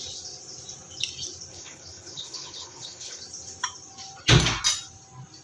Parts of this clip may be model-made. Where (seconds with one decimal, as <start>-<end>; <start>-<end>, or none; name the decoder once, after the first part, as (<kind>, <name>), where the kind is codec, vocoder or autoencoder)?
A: 1.5-3.2 (codec, HILCodec)